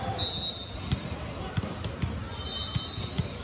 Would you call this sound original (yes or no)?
yes